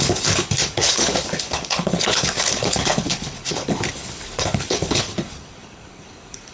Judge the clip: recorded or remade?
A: remade